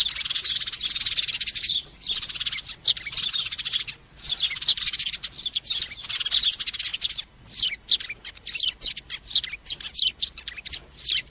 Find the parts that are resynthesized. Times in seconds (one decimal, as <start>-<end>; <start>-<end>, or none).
none

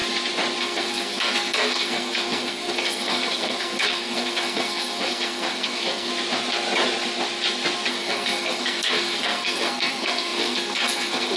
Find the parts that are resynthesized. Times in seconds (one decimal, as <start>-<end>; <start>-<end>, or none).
0.6-6.1; 7.9-11.4